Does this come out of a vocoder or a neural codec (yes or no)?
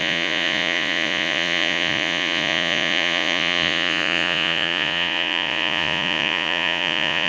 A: yes